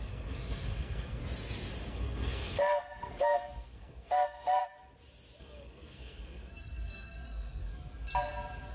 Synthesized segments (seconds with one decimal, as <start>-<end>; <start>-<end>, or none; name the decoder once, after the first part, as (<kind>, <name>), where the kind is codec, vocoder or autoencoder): 0.0-1.2 (codec, SNAC); 1.9-4.6; 5.4-7.7